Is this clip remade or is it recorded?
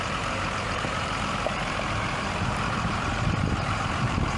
remade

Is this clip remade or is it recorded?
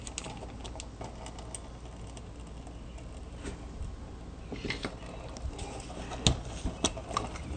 recorded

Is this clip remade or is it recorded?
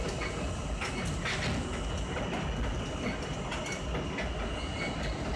recorded